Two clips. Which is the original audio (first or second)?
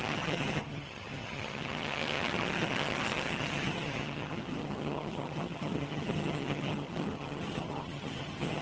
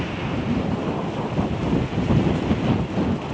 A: second